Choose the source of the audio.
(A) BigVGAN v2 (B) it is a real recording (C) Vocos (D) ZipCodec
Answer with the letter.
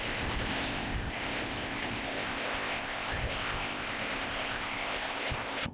D